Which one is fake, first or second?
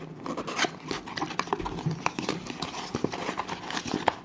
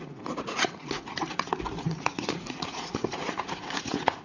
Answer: second